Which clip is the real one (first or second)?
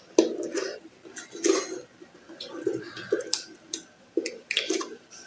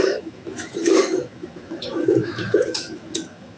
first